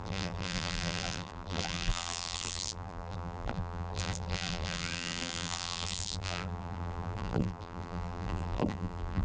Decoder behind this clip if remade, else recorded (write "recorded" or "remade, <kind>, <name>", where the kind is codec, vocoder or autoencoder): remade, vocoder, BigVGAN v2